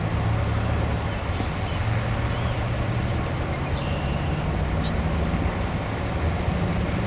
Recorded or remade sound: recorded